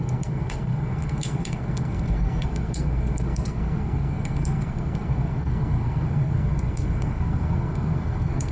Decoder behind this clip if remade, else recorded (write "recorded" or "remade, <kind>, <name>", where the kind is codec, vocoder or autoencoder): remade, codec, SNAC